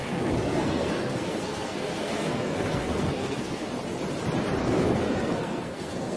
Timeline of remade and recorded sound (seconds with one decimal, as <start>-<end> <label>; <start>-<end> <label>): 0.0-3.7 remade; 3.7-4.6 recorded; 4.6-6.2 remade